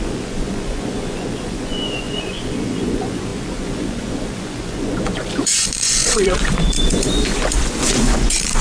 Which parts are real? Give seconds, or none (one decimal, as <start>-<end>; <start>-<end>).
none